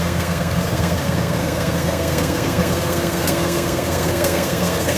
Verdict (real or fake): fake